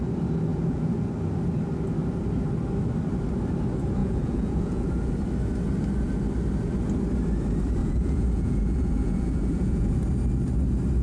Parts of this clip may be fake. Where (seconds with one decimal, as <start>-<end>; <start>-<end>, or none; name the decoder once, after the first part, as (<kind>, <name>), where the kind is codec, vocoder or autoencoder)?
0.5-1.1 (vocoder, Vocos); 4.0-5.1; 7.8-10.0